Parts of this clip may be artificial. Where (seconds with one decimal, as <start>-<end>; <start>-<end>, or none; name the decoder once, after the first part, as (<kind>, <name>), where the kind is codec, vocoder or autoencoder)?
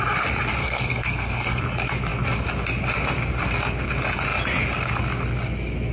0.6-1.6 (codec, SNAC)